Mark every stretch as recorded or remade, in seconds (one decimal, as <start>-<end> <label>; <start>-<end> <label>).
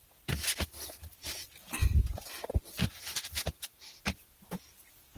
0.0-1.0 recorded; 1.0-4.0 remade; 4.0-5.2 recorded